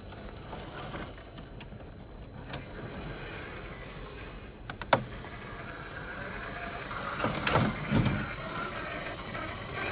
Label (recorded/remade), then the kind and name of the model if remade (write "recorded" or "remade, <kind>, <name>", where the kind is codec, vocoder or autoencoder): recorded